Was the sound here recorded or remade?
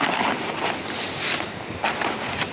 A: recorded